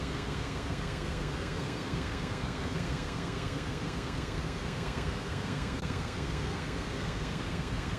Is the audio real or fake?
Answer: fake